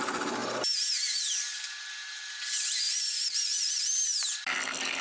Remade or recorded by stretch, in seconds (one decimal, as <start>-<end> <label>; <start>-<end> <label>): 0.0-5.0 recorded